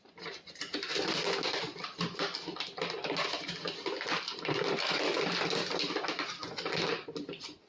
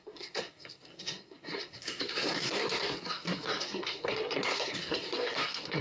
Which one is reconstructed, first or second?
second